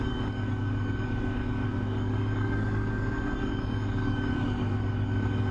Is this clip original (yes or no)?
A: no